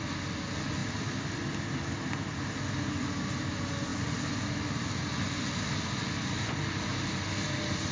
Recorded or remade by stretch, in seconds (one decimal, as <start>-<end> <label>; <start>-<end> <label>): 0.0-7.9 recorded